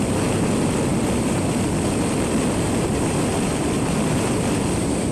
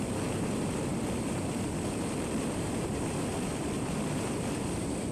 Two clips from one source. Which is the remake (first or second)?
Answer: second